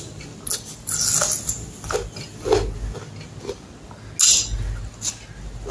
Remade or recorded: recorded